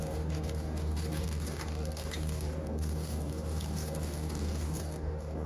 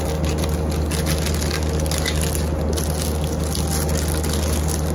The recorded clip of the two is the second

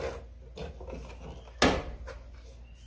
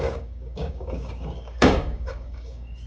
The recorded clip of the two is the first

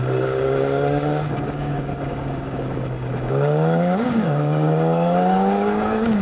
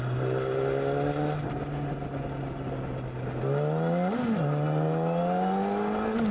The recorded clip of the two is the second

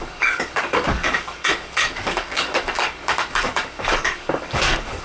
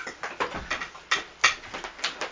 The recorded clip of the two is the second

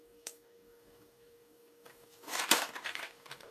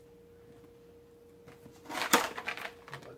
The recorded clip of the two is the second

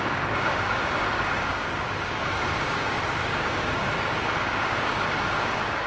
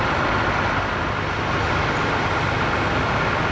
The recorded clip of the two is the second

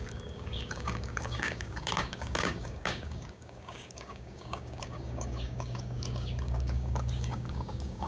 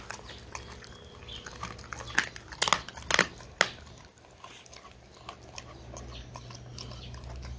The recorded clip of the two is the second